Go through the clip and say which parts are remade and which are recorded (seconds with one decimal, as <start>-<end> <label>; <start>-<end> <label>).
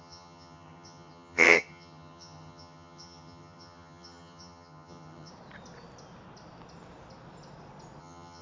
0.0-5.3 remade; 5.3-8.0 recorded; 8.0-8.4 remade